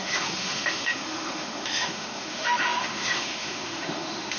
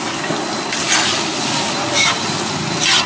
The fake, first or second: first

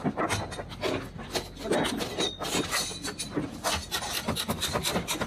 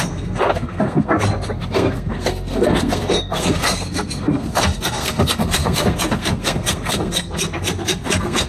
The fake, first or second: second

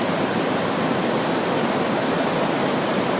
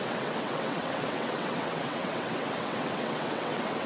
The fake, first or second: second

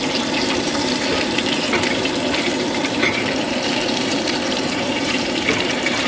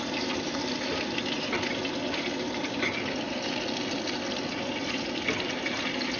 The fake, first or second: first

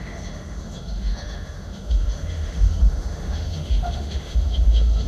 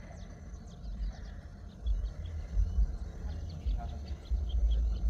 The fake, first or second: first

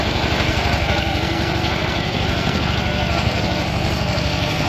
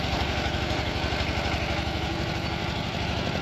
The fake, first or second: first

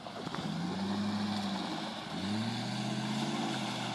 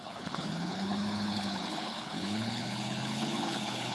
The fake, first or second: second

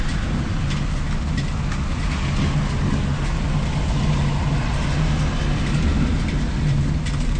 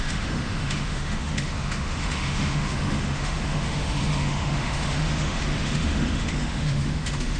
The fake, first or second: second